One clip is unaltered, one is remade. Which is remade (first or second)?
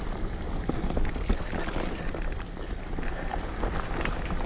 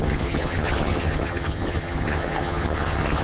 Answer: second